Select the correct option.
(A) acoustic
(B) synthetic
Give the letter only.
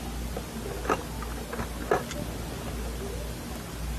A